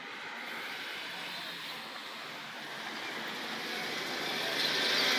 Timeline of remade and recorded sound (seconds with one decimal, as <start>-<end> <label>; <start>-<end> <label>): 0.0-5.2 recorded